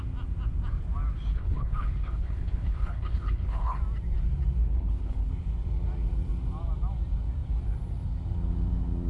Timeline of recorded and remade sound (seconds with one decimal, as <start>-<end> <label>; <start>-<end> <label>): 0.0-1.3 recorded; 1.3-3.8 remade; 3.8-4.6 recorded; 4.6-5.3 remade; 5.3-9.1 recorded